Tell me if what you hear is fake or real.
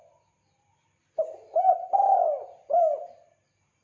real